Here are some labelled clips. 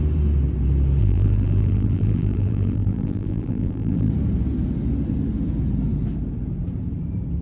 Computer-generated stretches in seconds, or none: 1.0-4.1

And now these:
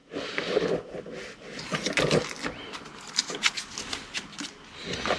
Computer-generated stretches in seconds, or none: none

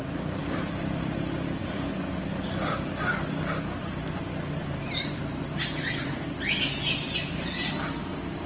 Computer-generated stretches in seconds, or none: 1.6-2.2

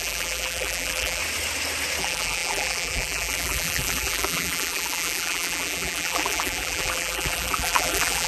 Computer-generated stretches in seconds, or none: 0.0-1.2; 2.0-8.3

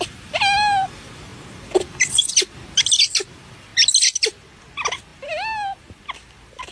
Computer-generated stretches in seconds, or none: none

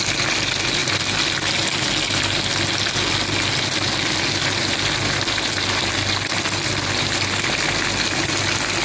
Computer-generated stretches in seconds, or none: none